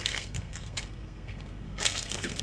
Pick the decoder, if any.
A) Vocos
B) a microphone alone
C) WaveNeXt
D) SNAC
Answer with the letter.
D